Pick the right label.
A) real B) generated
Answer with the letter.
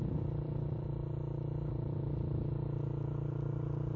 A